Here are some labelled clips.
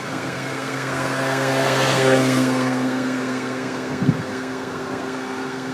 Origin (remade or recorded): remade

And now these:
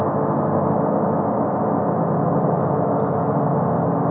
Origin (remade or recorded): recorded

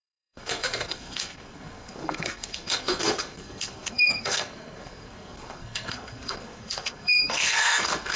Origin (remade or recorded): remade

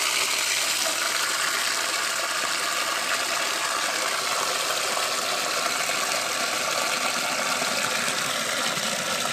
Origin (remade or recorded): recorded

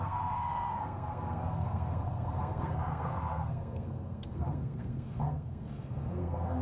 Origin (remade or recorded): remade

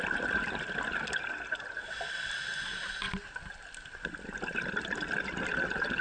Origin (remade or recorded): recorded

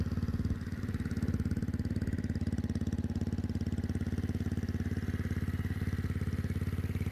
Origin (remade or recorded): recorded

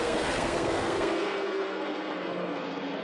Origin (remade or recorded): remade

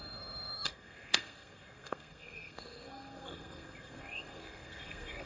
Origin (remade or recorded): remade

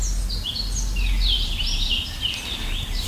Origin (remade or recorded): recorded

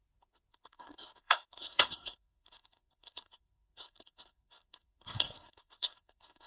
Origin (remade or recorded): remade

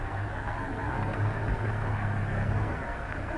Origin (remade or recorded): remade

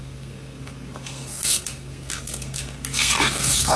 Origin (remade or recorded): remade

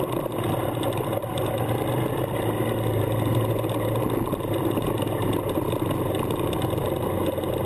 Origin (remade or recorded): recorded